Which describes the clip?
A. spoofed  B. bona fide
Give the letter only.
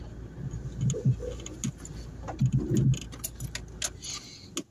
B